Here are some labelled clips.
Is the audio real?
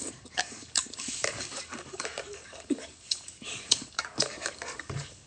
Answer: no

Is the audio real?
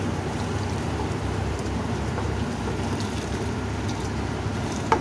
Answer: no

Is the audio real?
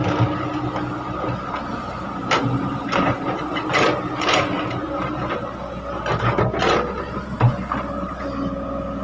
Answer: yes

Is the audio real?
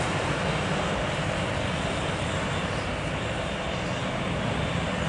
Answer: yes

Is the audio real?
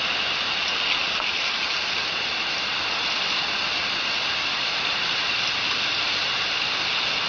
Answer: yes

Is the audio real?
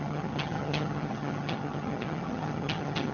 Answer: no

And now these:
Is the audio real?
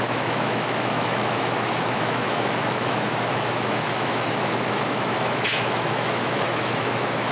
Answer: no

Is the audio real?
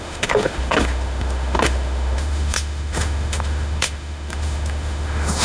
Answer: no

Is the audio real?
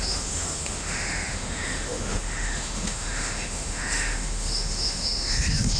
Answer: no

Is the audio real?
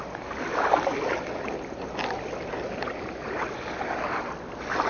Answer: yes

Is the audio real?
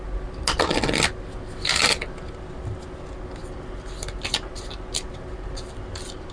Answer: yes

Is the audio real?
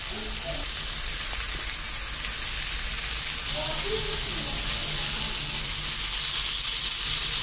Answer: yes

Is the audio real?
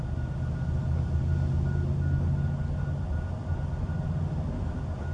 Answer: yes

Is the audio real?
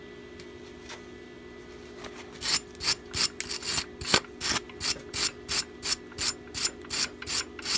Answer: yes